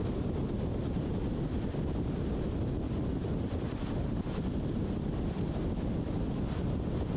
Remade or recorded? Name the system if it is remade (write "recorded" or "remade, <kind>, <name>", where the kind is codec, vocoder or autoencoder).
recorded